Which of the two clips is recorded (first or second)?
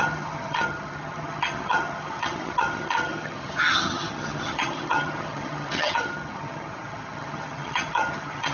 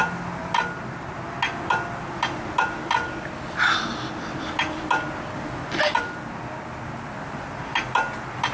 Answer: second